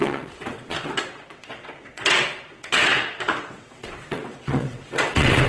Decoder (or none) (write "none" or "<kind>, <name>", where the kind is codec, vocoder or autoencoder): vocoder, WaveNeXt